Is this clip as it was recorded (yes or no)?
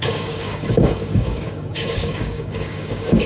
no